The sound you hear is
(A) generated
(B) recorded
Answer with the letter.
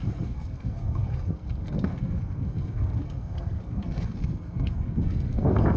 A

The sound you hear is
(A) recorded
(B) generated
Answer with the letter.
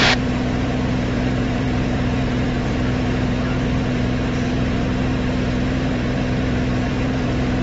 B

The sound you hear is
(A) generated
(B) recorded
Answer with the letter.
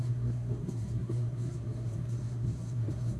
A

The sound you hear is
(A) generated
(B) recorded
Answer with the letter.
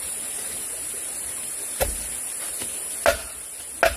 B